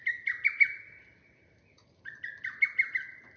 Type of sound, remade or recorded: recorded